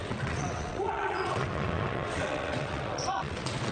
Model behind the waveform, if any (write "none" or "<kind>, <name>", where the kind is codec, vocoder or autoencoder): vocoder, WaveNeXt